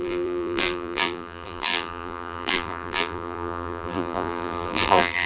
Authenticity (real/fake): fake